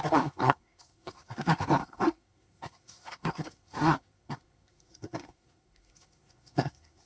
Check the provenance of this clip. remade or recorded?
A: remade